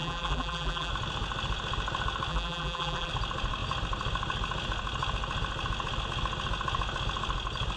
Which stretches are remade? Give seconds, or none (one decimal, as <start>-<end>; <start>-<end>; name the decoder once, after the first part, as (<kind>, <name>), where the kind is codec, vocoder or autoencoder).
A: 0.0-0.9 (vocoder, BigVGAN v2); 2.3-3.1